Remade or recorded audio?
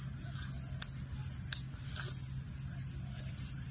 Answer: recorded